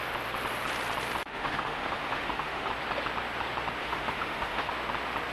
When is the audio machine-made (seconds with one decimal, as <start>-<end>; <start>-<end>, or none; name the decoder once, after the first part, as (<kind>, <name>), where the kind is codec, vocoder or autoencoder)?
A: 1.2-2.7 (autoencoder, DAC-VAE); 3.8-4.7